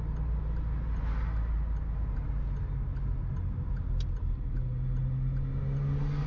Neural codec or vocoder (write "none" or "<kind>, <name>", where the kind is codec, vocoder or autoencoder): none